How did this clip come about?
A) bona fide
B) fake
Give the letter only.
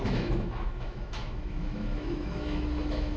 B